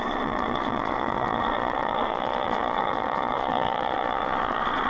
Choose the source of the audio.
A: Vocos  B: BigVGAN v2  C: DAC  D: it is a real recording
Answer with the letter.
A